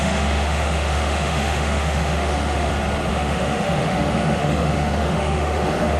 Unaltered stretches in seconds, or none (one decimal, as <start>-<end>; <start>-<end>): 2.7-3.1